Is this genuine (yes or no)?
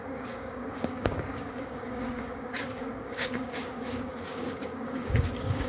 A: no